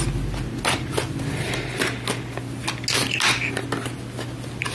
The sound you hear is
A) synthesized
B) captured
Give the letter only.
B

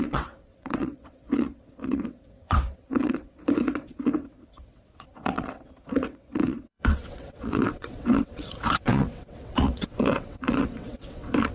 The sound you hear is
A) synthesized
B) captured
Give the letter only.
A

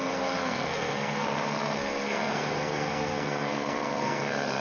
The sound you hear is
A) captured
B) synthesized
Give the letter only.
B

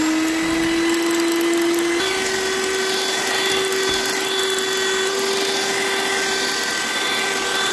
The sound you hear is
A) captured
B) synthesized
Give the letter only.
A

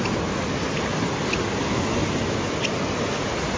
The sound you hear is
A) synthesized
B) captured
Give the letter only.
B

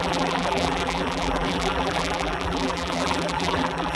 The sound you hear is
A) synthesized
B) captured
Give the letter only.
A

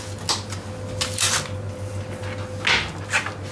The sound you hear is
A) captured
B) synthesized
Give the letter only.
A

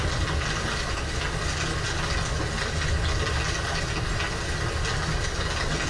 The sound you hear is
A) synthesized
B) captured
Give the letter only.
B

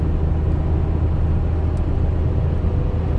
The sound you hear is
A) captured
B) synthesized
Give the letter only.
A